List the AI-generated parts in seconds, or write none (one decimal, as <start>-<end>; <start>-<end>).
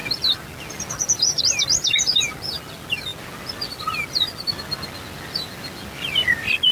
none